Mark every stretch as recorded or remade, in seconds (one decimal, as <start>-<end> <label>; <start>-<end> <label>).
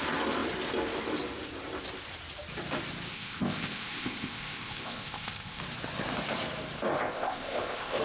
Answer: 0.0-3.1 recorded; 3.1-5.6 remade; 5.6-6.9 recorded; 6.9-8.0 remade